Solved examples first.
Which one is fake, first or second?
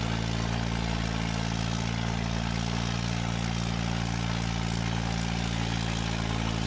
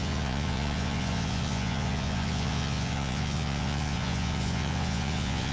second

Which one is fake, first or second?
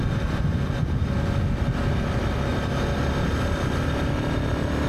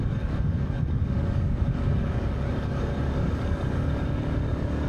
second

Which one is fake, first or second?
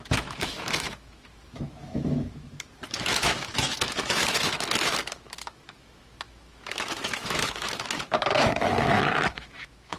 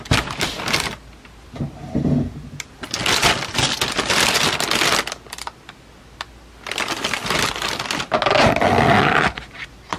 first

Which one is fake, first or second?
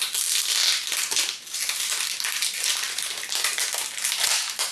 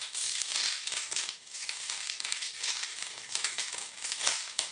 second